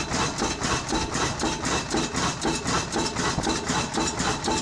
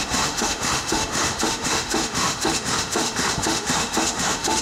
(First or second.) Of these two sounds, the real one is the first